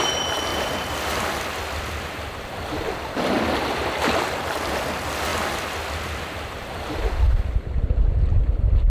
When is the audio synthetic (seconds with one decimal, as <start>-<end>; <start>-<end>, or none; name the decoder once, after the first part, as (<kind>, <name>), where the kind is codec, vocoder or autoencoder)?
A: 0.5-3.8 (vocoder, BigVGAN v2)